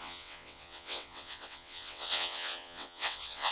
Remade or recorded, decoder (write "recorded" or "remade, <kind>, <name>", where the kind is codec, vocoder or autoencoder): remade, vocoder, WaveNeXt